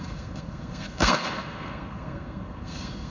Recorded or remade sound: remade